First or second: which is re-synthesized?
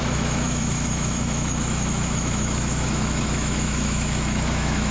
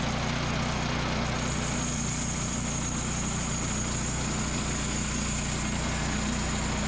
first